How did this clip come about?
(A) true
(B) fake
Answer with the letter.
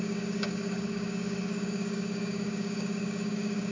B